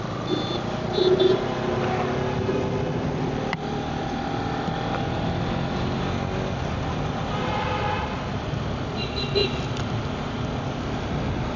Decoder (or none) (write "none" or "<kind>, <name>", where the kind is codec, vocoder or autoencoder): none